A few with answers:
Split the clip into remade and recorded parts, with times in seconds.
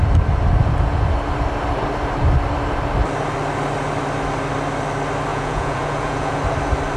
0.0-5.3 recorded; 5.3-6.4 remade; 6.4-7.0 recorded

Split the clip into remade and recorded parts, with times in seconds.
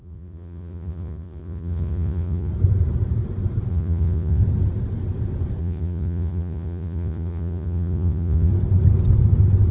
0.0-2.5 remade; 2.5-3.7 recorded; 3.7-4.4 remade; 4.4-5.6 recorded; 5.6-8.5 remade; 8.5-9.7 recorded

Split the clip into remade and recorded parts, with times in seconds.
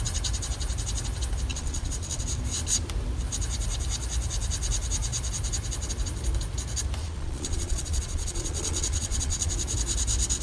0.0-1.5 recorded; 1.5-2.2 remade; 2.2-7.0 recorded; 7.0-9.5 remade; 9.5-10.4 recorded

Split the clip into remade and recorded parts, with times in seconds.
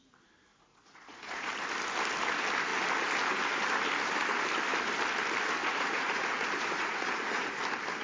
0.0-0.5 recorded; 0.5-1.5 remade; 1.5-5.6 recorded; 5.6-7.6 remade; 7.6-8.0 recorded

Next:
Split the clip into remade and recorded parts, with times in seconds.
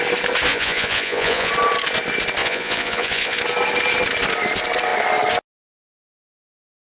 0.0-0.5 recorded; 0.5-1.5 remade; 1.5-2.4 recorded; 2.4-3.4 remade; 3.4-6.9 recorded